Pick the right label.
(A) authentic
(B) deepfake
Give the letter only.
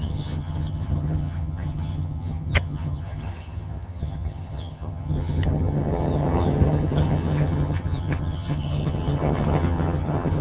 B